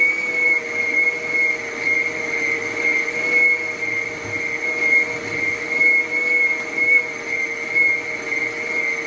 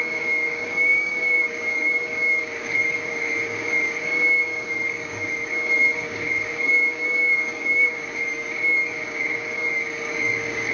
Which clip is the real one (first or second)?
first